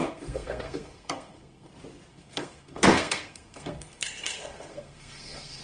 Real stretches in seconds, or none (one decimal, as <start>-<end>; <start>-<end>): 1.7-2.1